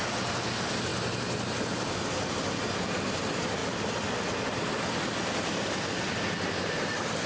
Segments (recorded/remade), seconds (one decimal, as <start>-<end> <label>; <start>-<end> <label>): 0.0-7.3 recorded